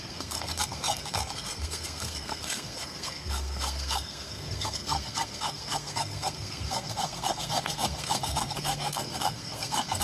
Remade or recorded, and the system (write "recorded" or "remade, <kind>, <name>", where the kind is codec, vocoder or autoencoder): remade, codec, SNAC